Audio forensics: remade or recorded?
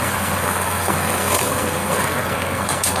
remade